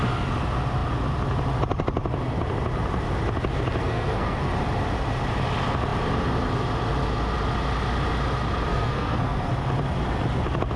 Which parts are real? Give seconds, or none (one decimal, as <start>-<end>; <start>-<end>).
0.0-3.8; 4.5-8.7; 9.5-10.8